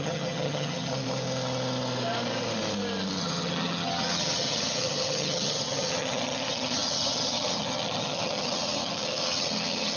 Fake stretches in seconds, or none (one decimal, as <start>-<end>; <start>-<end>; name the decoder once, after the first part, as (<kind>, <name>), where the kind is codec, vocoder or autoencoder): 0.0-0.9 (vocoder, HiFi-GAN); 3.2-10.0